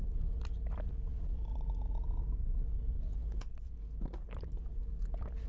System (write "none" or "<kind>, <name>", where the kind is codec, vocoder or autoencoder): none